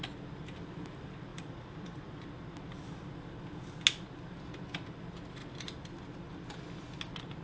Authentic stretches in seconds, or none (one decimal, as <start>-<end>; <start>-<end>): 0.0-1.3; 2.1-5.4; 6.7-7.4